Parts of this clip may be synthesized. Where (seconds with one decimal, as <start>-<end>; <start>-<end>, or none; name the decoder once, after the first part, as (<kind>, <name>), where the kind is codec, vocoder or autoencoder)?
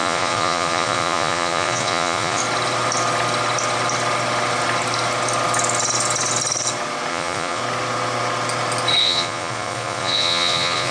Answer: 0.0-2.4 (vocoder, Vocos); 7.1-7.6; 9.0-10.9